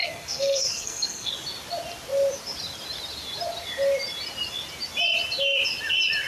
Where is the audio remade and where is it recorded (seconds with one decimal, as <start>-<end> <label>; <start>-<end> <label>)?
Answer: 0.0-1.3 remade; 1.3-6.3 recorded